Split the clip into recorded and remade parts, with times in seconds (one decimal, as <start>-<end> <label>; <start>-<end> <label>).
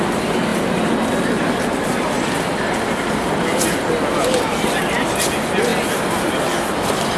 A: 0.0-7.2 recorded